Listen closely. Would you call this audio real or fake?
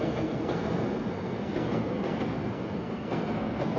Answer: fake